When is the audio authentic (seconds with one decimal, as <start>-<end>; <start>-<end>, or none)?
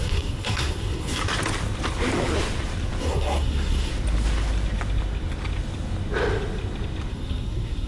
1.2-3.0; 3.9-7.1